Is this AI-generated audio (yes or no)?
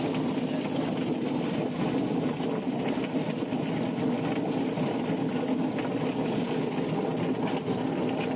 no